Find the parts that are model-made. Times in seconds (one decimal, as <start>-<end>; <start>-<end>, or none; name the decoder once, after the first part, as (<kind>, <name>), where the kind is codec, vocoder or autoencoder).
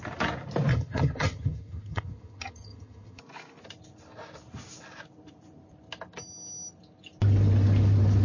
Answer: 0.7-3.2 (vocoder, HiFi-GAN)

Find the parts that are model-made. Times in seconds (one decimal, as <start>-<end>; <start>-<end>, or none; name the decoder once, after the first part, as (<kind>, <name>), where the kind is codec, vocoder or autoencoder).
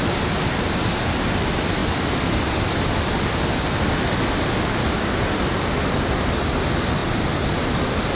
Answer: none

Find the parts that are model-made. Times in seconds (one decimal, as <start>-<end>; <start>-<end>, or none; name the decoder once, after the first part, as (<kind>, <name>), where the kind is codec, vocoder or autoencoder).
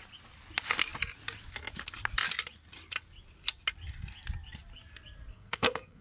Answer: 5.3-6.0 (codec, SNAC)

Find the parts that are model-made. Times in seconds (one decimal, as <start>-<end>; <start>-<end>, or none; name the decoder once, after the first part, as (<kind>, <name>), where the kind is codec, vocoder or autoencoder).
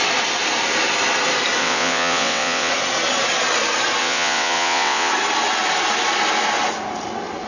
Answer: 1.6-2.7 (vocoder, WaveNeXt); 4.0-5.1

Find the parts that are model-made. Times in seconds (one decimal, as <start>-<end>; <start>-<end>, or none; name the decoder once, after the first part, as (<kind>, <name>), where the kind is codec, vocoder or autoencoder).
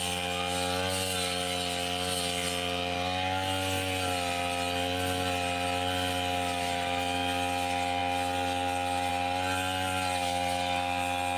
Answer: none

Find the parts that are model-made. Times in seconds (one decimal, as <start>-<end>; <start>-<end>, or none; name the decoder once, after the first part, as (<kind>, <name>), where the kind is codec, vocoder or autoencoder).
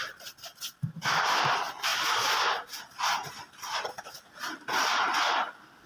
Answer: none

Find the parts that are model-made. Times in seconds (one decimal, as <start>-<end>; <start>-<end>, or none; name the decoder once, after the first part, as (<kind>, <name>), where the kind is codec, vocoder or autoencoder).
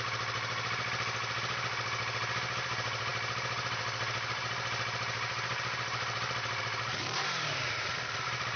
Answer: none